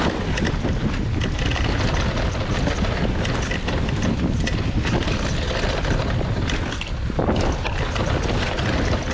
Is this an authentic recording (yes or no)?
yes